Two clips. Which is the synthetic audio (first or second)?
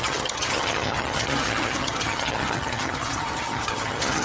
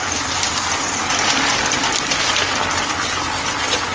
first